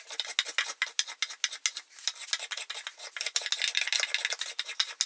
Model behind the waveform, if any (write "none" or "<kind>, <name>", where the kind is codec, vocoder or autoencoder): none